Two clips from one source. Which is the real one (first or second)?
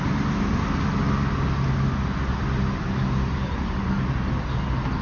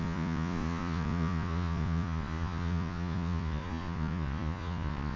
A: first